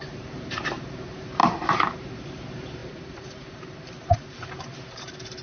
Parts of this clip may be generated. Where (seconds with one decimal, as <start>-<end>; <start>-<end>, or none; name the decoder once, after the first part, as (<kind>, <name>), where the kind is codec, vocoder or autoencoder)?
0.0-5.4 (vocoder, BigVGAN v2)